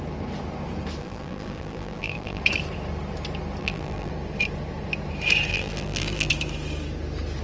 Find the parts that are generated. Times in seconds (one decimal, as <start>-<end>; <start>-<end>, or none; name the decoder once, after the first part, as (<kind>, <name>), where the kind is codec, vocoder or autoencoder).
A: 1.0-2.4 (vocoder, BigVGAN v2); 3.6-4.1; 5.5-6.3

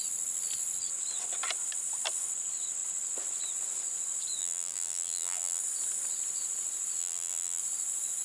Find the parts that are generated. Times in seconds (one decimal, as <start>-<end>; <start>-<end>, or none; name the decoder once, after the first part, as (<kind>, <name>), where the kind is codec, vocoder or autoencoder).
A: 4.4-5.6 (vocoder, BigVGAN v2); 7.0-7.6

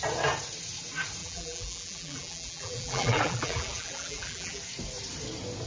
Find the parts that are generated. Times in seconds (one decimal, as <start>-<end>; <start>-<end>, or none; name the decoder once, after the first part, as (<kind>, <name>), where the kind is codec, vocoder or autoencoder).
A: 1.2-4.6 (vocoder, BigVGAN v2)

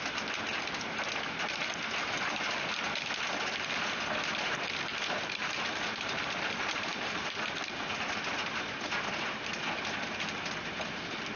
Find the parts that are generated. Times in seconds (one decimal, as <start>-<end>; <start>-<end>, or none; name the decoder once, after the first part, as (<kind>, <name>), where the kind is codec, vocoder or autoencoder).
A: 4.9-7.4 (vocoder, BigVGAN v2)

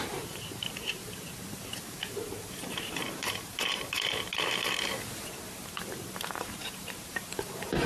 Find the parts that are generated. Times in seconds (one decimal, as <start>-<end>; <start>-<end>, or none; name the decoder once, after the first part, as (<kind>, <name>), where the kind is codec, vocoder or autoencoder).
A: 0.0-4.3 (vocoder, BigVGAN v2); 5.5-7.9

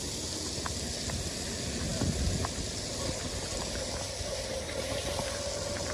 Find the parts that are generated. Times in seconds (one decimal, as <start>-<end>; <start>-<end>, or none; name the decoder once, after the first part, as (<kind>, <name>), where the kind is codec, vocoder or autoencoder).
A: none

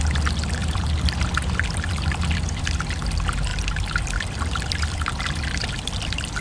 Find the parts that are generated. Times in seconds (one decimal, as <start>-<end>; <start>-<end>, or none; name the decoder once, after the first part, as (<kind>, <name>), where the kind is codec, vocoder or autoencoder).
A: 0.6-2.9 (vocoder, BigVGAN v2); 3.5-6.4

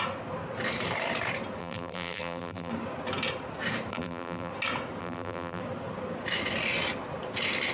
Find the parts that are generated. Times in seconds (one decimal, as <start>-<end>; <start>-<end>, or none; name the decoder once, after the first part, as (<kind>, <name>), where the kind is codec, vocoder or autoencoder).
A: 1.6-2.7 (vocoder, BigVGAN v2); 3.9-4.5; 5.0-5.6